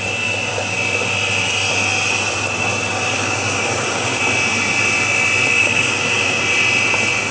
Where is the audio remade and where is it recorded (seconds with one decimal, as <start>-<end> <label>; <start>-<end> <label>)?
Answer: 0.0-2.9 recorded; 2.9-4.2 remade; 4.2-5.6 recorded; 5.6-6.4 remade; 6.4-7.3 recorded